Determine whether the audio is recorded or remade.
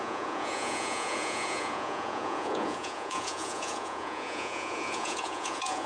remade